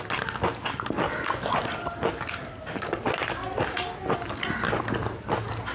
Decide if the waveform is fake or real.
real